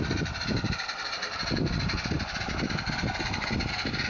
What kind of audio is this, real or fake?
real